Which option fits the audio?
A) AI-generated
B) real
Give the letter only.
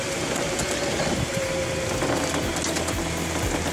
B